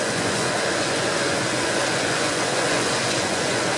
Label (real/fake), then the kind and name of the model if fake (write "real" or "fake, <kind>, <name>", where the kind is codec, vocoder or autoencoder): fake, vocoder, Vocos